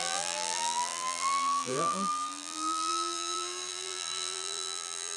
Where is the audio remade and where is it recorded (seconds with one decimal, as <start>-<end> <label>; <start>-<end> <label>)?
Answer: 0.0-5.2 remade